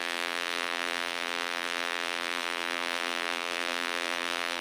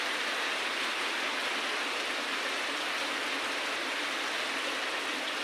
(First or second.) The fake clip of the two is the first